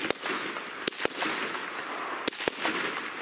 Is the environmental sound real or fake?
real